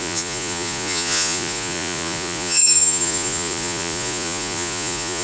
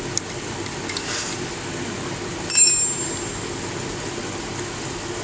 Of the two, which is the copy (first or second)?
first